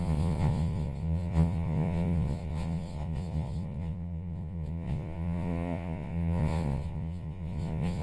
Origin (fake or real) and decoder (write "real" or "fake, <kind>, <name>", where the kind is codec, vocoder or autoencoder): fake, vocoder, Vocos